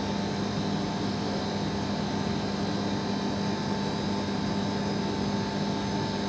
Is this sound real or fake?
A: real